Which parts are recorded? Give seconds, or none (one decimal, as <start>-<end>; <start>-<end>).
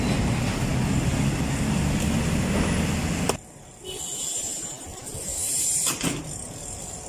0.0-7.1